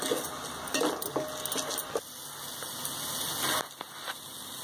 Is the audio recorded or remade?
recorded